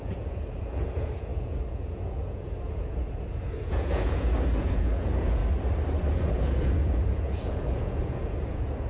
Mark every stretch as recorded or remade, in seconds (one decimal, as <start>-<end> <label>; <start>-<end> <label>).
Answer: 0.0-5.4 remade; 5.4-6.1 recorded; 6.1-8.9 remade